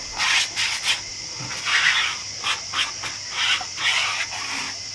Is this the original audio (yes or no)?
yes